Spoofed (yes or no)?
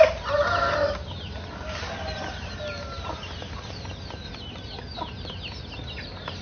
no